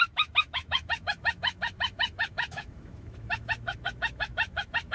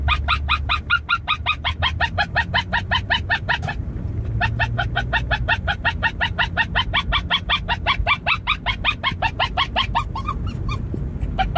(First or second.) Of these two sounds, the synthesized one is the first